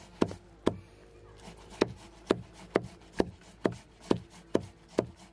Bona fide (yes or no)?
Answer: yes